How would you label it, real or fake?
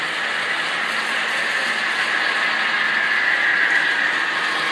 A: real